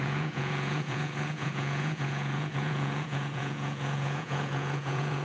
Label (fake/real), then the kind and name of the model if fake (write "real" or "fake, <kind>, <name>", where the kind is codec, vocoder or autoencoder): fake, vocoder, Vocos